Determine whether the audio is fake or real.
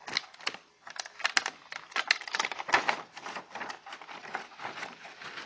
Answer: real